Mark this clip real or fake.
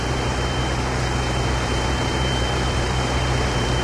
fake